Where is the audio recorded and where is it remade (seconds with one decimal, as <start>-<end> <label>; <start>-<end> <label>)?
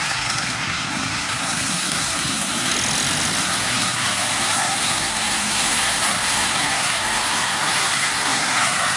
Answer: 0.0-2.7 remade; 2.7-3.4 recorded; 3.4-9.0 remade